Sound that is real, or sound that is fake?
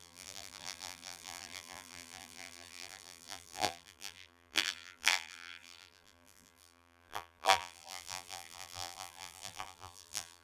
fake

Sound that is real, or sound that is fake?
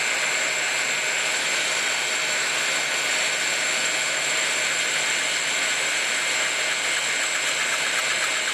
real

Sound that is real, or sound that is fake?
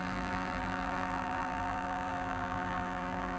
fake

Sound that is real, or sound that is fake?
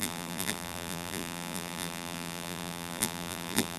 fake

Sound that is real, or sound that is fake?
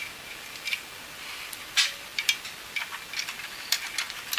real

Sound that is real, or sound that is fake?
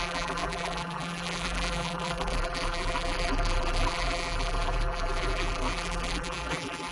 fake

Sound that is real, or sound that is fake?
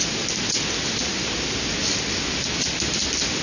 real